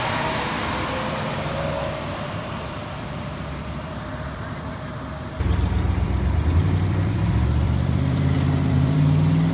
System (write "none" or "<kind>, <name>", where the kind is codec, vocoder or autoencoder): vocoder, BigVGAN v2